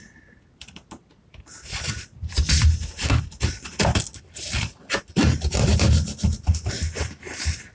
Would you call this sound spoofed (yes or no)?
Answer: no